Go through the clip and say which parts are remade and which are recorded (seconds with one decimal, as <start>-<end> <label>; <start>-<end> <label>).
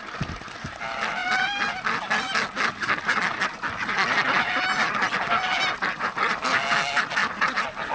0.0-7.9 recorded